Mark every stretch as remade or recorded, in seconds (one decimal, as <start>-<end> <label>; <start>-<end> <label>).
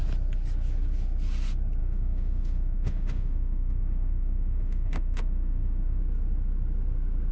0.0-1.8 recorded; 1.8-6.0 remade; 6.0-7.3 recorded